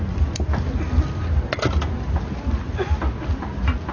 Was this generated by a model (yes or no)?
no